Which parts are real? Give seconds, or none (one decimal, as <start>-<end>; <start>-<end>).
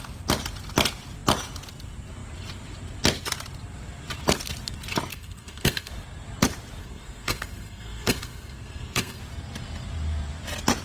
0.0-5.1; 5.9-6.8; 9.2-10.8